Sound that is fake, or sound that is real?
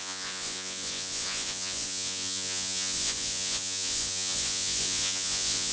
fake